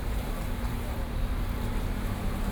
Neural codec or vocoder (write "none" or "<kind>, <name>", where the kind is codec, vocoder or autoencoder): vocoder, BigVGAN v2